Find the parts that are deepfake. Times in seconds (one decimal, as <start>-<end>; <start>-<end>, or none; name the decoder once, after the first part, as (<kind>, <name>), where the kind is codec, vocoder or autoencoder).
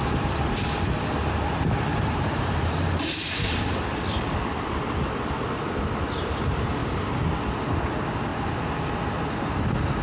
1.9-3.8 (vocoder, BigVGAN v2); 8.3-8.8